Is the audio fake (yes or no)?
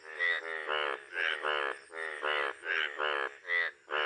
no